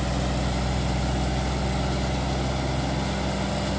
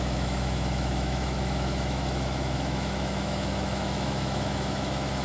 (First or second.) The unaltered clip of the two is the first